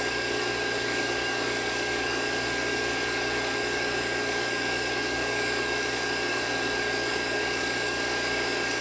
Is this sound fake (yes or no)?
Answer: yes